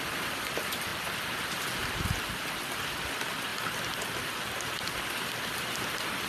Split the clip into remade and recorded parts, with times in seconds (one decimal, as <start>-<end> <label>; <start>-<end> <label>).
0.0-6.3 recorded